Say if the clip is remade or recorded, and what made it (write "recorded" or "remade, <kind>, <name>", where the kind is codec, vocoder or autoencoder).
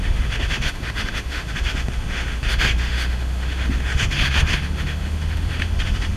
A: remade, autoencoder, DAC-VAE